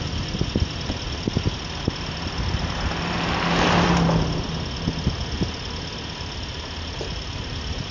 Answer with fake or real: real